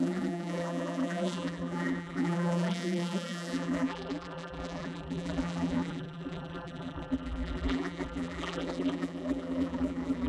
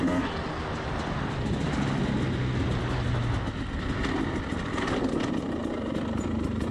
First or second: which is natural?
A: second